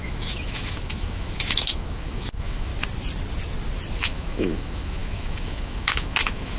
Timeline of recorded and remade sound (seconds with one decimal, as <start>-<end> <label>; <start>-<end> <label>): 0.0-2.7 remade; 2.7-4.0 recorded; 4.0-6.6 remade